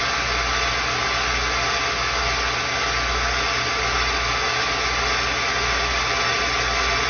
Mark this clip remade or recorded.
recorded